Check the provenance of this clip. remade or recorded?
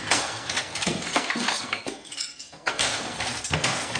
remade